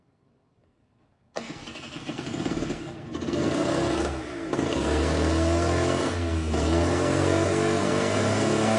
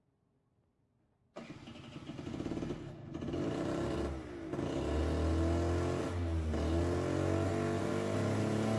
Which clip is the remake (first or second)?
first